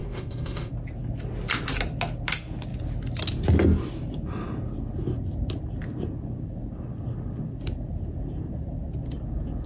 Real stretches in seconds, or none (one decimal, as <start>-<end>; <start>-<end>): 0.7-9.7